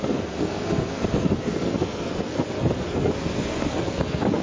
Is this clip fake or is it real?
fake